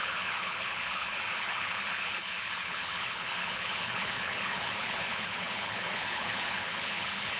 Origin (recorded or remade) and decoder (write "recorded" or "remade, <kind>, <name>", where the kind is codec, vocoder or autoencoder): remade, codec, HILCodec